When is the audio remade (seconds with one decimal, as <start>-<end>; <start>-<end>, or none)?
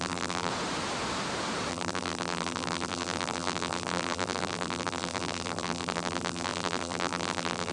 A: 0.0-0.5; 1.7-7.7